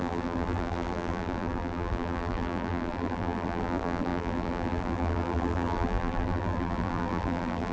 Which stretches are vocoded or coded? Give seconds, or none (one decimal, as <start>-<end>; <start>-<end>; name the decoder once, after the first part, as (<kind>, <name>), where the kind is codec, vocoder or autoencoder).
0.0-7.7 (vocoder, BigVGAN v2)

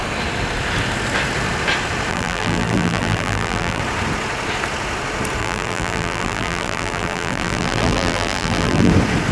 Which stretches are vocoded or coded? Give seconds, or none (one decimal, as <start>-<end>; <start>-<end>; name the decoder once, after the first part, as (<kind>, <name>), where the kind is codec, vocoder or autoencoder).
2.1-3.8 (vocoder, BigVGAN v2); 5.4-8.9

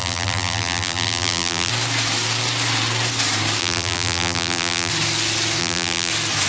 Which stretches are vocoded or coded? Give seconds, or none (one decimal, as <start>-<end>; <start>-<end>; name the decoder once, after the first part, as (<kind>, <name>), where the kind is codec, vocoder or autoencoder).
0.0-1.7 (vocoder, BigVGAN v2); 3.6-4.9; 5.6-6.1

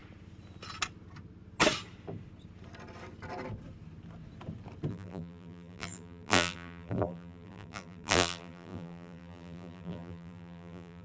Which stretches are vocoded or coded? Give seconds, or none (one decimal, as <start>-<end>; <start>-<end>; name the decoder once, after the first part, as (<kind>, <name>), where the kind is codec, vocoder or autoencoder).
4.9-11.0 (vocoder, BigVGAN v2)

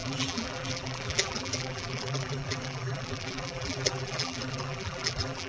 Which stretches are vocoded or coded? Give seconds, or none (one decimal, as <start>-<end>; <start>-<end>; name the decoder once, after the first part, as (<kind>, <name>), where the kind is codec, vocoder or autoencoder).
0.0-5.5 (vocoder, BigVGAN v2)

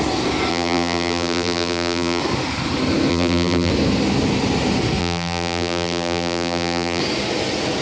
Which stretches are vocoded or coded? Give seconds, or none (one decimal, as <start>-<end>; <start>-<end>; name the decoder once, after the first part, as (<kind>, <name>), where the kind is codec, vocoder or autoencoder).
0.5-2.2 (vocoder, BigVGAN v2); 3.1-3.7; 5.0-7.0

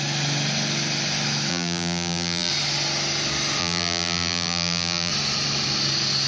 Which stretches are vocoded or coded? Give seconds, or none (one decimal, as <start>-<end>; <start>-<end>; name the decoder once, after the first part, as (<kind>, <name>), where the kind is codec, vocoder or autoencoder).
1.5-2.5 (vocoder, BigVGAN v2); 3.6-5.1